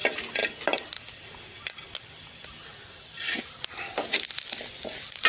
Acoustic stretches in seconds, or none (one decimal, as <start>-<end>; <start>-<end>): 0.0-5.3